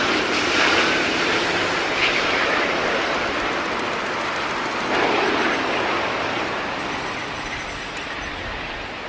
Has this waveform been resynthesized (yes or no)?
no